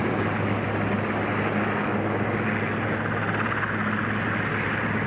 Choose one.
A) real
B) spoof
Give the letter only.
A